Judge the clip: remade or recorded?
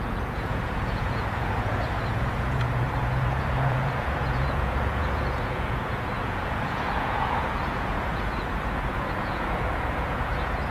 remade